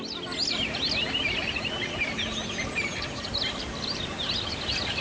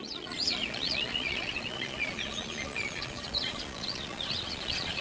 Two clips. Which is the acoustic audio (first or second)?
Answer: first